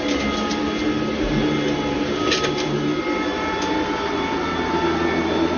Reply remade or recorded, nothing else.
recorded